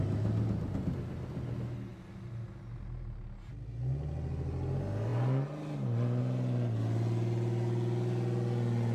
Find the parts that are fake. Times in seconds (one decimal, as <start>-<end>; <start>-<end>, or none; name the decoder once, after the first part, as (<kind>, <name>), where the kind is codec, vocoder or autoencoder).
none